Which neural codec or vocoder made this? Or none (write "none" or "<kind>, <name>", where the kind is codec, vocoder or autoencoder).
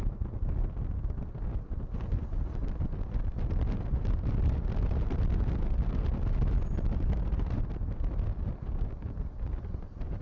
none